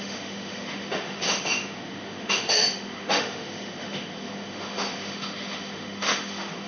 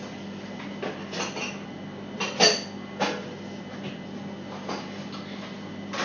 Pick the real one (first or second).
second